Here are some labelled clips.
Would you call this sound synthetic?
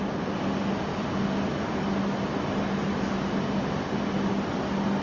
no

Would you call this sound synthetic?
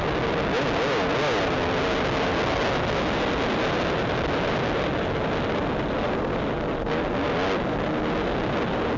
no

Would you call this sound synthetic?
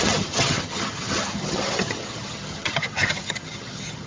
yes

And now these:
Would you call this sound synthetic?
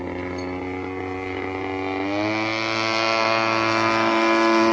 no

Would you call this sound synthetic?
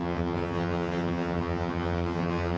yes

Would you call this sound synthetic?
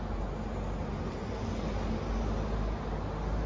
no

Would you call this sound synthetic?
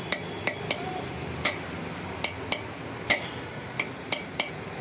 no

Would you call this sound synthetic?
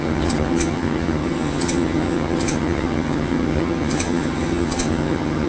yes